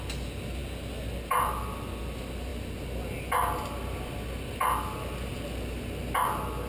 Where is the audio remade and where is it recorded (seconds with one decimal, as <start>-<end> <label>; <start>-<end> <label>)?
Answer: 0.0-6.7 recorded